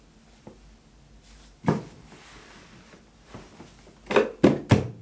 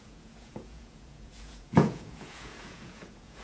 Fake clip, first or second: second